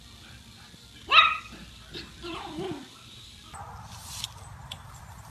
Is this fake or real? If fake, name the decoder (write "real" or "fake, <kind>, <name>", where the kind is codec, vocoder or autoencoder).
fake, vocoder, BigVGAN v2